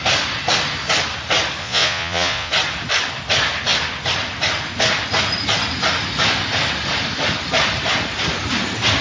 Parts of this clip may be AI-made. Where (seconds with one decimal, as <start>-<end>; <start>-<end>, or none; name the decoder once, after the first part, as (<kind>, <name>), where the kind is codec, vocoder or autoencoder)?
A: 1.6-2.5 (vocoder, Vocos)